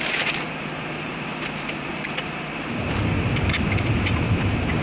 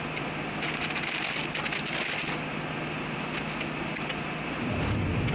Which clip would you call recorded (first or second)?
second